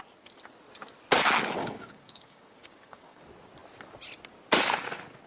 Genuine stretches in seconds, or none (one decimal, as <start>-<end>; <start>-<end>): 0.0-1.6; 3.2-5.3

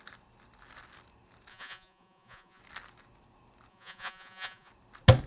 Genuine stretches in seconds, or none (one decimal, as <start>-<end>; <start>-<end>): 0.0-1.5; 2.6-3.7; 4.7-5.3

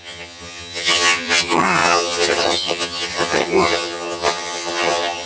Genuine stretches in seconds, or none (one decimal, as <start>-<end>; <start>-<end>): none

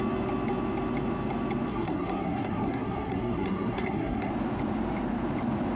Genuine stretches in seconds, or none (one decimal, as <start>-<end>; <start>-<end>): 0.0-1.7; 4.3-5.8

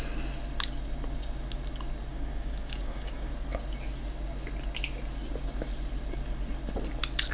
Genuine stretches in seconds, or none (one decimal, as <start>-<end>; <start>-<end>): 0.0-2.1; 3.3-7.3